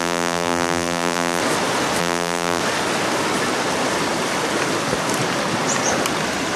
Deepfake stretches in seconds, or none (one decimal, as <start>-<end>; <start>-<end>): 0.0-1.4; 2.0-2.6

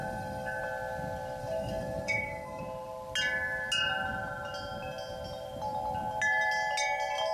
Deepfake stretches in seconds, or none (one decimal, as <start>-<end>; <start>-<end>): 0.0-0.6; 1.4-2.6

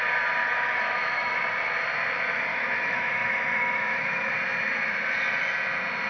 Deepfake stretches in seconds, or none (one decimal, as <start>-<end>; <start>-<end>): 0.4-1.4; 2.5-4.3